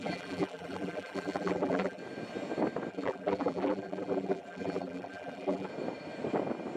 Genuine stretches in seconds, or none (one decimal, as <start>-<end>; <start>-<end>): 2.0-2.9; 5.7-6.8